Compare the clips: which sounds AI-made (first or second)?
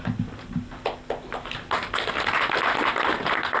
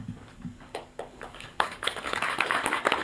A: second